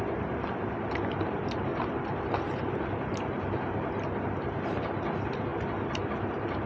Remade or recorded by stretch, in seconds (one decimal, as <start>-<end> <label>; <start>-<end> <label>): 0.0-6.7 recorded